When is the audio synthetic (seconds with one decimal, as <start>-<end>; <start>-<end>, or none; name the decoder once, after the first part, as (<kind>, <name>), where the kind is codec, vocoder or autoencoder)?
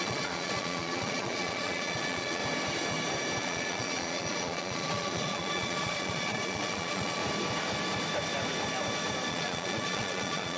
0.0-2.4 (vocoder, Vocos); 3.4-7.2; 9.3-10.6